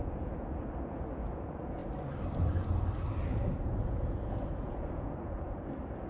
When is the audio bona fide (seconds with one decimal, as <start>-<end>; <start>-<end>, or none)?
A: 1.8-3.2